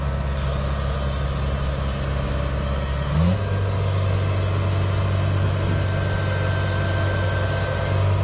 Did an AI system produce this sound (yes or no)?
no